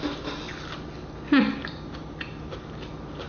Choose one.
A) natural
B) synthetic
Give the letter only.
A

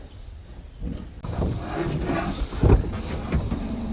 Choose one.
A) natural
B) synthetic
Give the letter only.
A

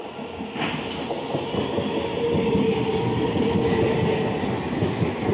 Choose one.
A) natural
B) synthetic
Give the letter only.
A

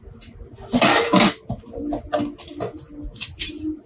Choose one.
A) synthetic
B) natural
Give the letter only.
B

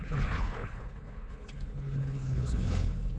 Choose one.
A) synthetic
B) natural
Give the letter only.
A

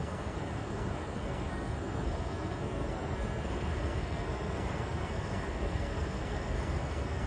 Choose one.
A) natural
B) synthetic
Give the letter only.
B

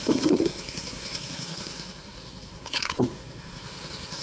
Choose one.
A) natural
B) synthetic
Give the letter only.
B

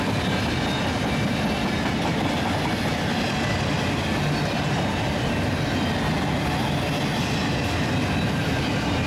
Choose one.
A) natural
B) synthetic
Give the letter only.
A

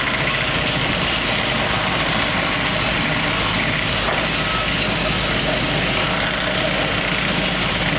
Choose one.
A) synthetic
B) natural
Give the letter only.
B